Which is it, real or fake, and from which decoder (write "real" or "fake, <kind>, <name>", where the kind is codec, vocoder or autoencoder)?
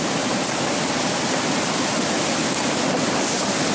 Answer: real